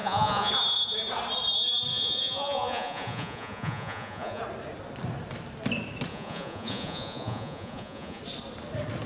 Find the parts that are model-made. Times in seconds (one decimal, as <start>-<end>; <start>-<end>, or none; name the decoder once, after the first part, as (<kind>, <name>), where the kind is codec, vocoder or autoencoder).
0.0-0.5 (vocoder, Vocos); 1.9-4.4; 6.1-8.2